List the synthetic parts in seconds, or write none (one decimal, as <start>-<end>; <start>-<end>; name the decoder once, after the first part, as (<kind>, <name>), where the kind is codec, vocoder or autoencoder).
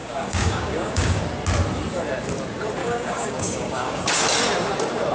0.0-1.2 (codec, DAC); 2.8-4.0